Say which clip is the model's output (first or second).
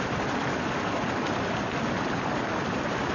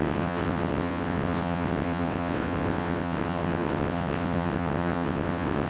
second